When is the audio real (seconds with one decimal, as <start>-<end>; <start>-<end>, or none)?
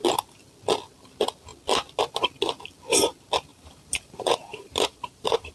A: 0.0-3.5